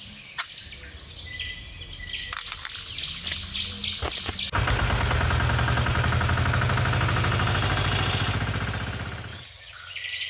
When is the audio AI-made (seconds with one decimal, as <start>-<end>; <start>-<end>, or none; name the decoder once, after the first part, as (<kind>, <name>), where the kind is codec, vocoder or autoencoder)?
9.3-9.9 (vocoder, WaveNeXt)